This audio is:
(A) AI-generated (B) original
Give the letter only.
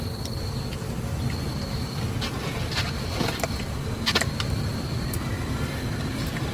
B